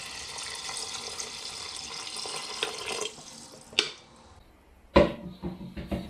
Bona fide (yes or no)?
yes